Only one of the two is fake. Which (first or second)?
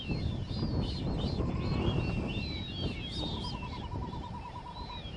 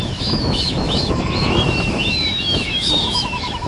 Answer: second